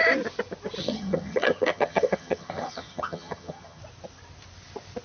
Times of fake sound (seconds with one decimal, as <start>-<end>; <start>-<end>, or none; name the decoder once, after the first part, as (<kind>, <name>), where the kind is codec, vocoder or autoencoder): 0.8-3.8 (vocoder, HiFi-GAN)